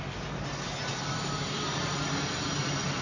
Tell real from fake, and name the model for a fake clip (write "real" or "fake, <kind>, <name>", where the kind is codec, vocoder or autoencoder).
real